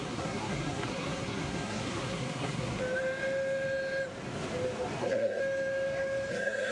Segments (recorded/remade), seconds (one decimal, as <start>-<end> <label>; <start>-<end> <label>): 0.0-2.8 remade; 2.8-5.0 recorded; 5.0-5.4 remade; 5.4-6.3 recorded; 6.3-6.7 remade